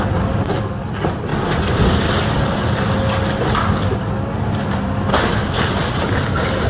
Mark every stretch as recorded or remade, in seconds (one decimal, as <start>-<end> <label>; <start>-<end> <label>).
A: 0.0-6.7 recorded